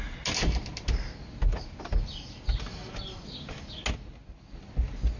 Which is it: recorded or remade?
recorded